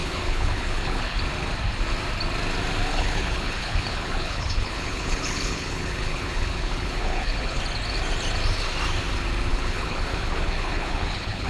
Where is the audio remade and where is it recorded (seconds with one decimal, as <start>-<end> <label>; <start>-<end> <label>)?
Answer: 0.0-1.2 remade; 1.2-2.9 recorded; 2.9-7.6 remade; 7.6-9.5 recorded; 9.5-11.5 remade